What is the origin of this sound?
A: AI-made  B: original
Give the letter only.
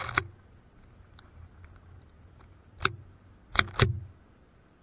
B